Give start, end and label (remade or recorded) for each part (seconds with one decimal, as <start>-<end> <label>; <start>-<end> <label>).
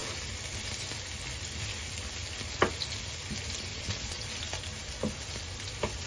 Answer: 0.0-3.7 recorded; 3.7-4.2 remade; 4.2-6.1 recorded